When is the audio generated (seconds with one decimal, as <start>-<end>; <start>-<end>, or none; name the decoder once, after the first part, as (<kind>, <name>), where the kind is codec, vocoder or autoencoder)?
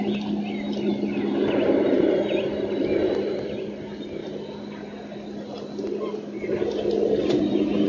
none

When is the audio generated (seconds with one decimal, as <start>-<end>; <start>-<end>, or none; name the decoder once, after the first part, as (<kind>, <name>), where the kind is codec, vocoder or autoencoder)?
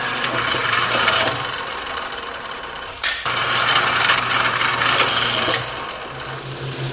0.6-4.7 (vocoder, BigVGAN v2)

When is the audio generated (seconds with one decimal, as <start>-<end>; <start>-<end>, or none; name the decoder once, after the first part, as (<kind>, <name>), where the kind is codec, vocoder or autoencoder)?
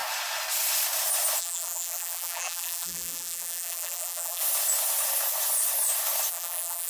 1.4-4.4 (vocoder, BigVGAN v2); 6.3-6.9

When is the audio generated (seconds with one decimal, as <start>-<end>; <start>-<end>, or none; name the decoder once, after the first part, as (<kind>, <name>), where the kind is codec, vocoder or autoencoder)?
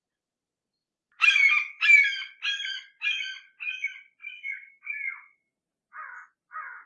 none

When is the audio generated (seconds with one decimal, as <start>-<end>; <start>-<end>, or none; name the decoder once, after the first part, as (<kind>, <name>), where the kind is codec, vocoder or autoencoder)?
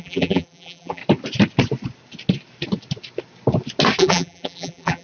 0.0-1.0 (vocoder, BigVGAN v2); 4.0-5.0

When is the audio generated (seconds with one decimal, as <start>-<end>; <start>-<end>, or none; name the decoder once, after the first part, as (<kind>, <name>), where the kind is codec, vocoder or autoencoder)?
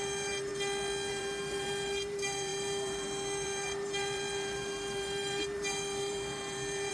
0.0-0.5 (vocoder, BigVGAN v2); 1.1-6.9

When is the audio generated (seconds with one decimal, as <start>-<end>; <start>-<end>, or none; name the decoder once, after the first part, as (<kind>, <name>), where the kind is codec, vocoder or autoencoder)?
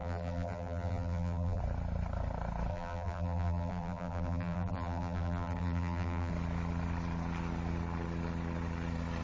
0.0-1.6 (vocoder, BigVGAN v2); 2.7-6.3